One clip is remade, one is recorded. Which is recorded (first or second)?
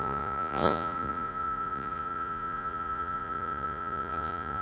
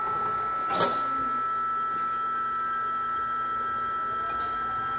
second